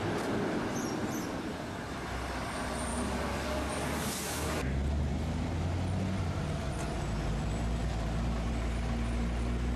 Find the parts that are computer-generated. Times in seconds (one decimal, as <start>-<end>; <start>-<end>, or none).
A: 2.9-4.5